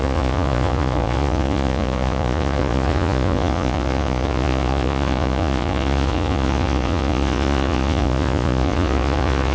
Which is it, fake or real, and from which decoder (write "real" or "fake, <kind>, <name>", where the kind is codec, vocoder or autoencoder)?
fake, vocoder, Vocos